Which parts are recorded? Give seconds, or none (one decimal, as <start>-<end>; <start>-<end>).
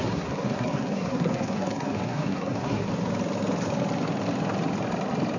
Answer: 2.9-5.4